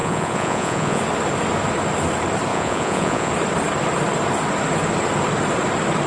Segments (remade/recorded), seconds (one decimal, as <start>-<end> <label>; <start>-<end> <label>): 0.0-1.0 remade; 1.0-2.5 recorded; 2.5-3.3 remade; 3.3-6.1 recorded